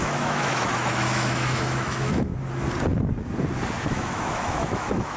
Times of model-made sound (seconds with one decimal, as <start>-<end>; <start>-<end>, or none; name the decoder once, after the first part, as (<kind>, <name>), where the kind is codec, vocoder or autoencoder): 0.0-2.3 (autoencoder, DAC-VAE); 3.8-5.2